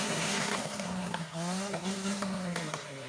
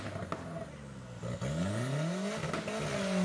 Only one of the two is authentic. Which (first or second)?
second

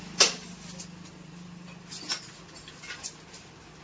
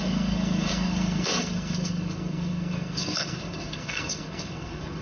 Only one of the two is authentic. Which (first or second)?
first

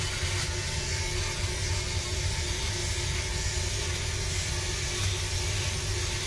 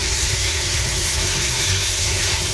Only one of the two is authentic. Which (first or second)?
first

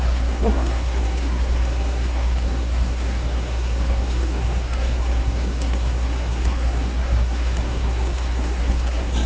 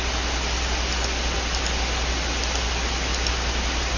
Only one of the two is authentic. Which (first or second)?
second